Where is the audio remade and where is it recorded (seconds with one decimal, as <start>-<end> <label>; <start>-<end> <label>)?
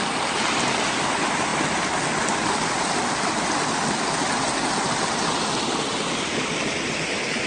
0.0-7.5 recorded